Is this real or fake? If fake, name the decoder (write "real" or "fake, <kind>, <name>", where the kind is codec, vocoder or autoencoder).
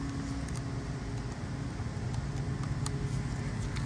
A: real